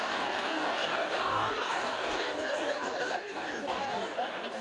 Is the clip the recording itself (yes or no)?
no